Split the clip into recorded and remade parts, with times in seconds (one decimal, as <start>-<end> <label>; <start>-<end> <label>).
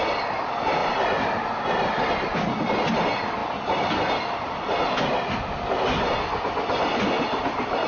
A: 0.0-7.9 recorded